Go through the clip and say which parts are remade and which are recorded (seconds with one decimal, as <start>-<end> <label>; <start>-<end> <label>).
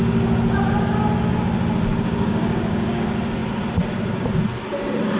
0.0-1.9 recorded; 1.9-3.0 remade; 3.0-5.2 recorded